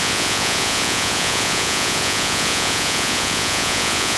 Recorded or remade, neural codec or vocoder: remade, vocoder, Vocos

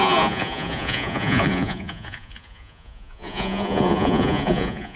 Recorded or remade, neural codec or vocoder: remade, vocoder, Vocos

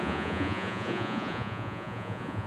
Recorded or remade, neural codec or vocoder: remade, vocoder, Vocos